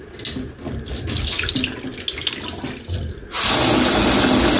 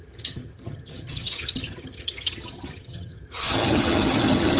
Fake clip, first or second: second